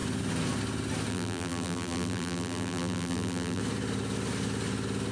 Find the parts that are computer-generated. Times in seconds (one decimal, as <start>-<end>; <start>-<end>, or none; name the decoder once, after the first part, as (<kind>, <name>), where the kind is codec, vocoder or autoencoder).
1.1-3.6 (vocoder, BigVGAN v2)